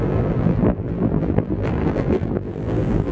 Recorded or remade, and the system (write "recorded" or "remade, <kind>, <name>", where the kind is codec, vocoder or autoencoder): remade, vocoder, BigVGAN v2